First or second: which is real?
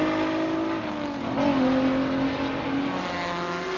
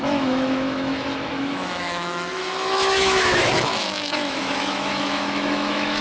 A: first